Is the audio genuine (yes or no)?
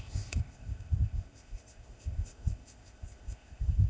no